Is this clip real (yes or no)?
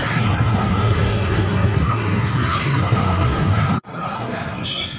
no